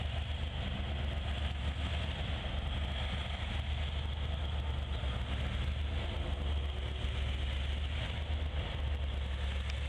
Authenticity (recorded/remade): recorded